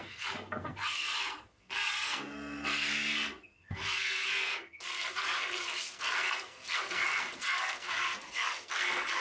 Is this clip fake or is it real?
fake